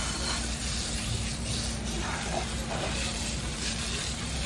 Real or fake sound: fake